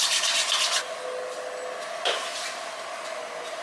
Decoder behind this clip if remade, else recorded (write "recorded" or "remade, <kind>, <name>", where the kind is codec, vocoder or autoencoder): recorded